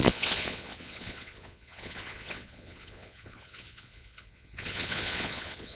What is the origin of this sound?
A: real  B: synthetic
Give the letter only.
B